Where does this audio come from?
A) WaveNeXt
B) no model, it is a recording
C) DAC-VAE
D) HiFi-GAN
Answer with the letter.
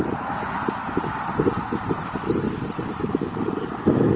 B